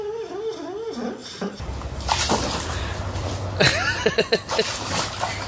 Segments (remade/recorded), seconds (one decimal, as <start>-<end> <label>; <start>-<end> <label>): 0.0-1.2 recorded; 1.2-2.3 remade; 2.3-3.7 recorded; 3.7-5.5 remade